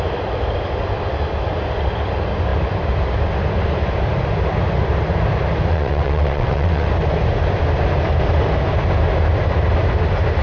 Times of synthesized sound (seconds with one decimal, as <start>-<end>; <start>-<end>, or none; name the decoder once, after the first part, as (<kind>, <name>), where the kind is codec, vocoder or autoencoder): 5.7-6.9 (vocoder, WaveNeXt)